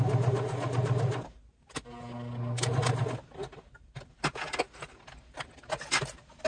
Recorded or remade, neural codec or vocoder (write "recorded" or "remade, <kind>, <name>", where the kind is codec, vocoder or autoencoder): recorded